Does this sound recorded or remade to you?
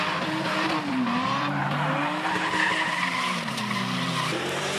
remade